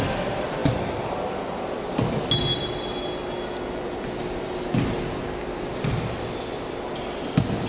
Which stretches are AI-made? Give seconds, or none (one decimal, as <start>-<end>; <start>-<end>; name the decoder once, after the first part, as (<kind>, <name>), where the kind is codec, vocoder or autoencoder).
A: none